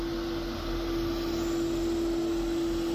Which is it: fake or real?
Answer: real